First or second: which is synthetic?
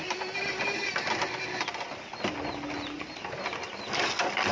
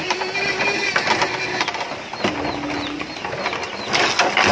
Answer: first